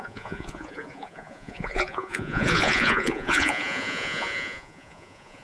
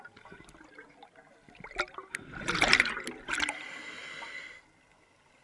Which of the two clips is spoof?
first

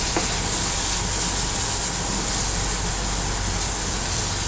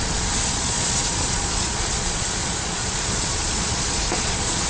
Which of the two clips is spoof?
second